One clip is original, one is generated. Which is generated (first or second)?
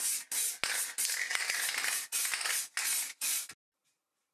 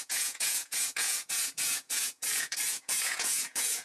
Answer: second